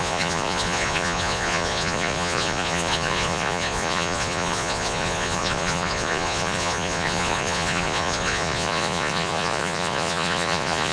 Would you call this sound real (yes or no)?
no